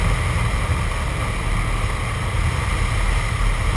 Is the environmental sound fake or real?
real